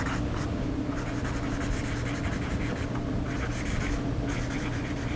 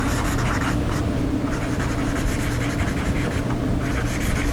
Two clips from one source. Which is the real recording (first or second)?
first